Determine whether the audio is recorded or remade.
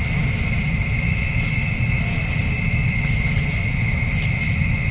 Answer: recorded